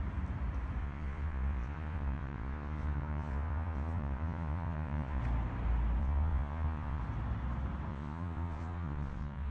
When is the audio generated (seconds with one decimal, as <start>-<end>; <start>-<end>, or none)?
0.8-5.2; 6.0-7.0; 7.9-9.5